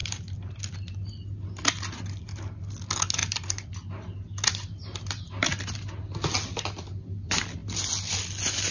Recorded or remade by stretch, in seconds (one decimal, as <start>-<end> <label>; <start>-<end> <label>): 0.0-0.6 remade; 0.6-3.2 recorded; 3.2-3.7 remade; 3.7-8.7 recorded

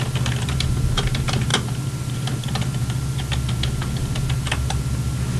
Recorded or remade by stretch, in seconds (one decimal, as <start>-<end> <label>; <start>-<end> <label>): 0.0-5.4 recorded